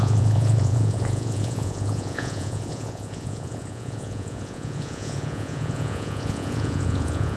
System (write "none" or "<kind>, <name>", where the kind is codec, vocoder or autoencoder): vocoder, Vocos